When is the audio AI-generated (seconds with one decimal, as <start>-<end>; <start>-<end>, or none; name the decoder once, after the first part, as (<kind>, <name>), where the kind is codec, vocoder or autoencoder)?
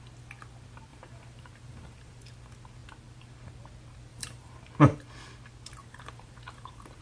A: 0.9-2.2 (vocoder, BigVGAN v2); 4.1-4.6; 5.8-7.0